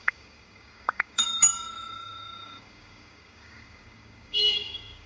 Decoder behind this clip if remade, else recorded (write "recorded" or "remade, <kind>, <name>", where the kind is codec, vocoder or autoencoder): remade, codec, DAC